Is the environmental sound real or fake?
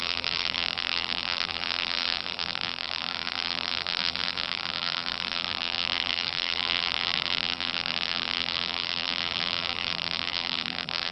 fake